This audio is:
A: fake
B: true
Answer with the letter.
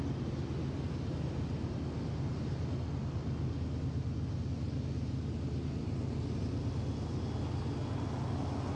B